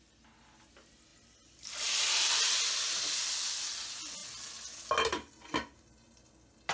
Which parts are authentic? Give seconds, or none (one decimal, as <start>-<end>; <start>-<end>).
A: 0.0-6.7